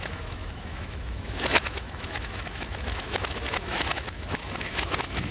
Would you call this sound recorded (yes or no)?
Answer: no